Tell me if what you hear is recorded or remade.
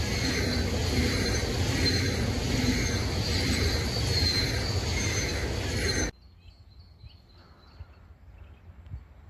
recorded